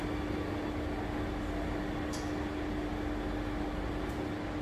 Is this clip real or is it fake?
real